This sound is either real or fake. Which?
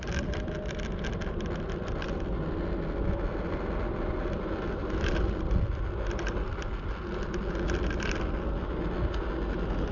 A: real